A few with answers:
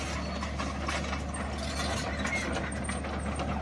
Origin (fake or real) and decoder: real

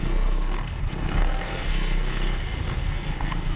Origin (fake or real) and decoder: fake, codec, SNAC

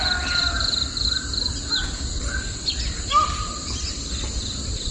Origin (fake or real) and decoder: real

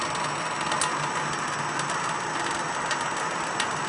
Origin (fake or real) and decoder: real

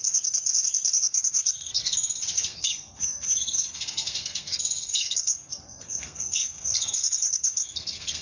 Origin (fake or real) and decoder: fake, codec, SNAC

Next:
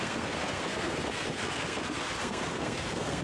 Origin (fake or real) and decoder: fake, codec, SNAC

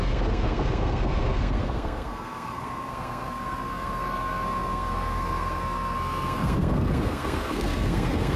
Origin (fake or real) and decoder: fake, codec, SNAC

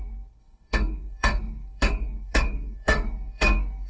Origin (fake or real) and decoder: fake, codec, SNAC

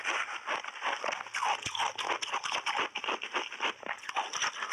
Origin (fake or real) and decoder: real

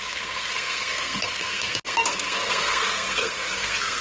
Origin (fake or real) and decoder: fake, codec, SNAC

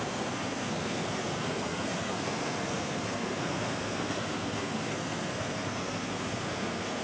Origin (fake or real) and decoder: fake, codec, SNAC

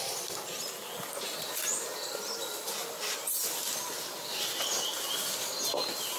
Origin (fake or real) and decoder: real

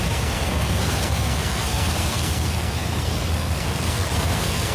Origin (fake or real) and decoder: fake, codec, SNAC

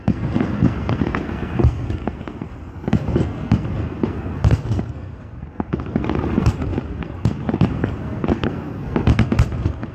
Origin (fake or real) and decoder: fake, codec, SNAC